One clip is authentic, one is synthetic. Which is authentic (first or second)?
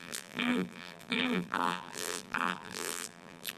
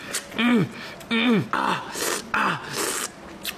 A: second